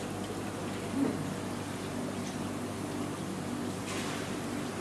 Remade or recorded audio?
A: recorded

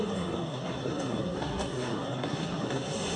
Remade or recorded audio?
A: remade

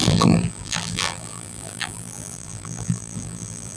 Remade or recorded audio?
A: remade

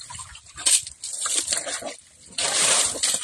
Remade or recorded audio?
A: remade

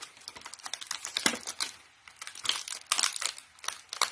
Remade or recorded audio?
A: recorded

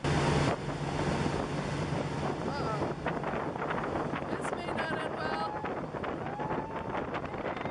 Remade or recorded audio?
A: recorded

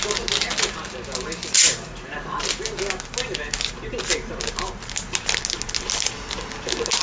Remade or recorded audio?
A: recorded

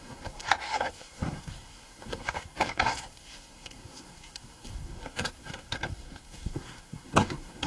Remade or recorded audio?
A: remade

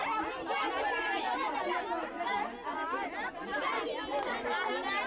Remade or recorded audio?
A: recorded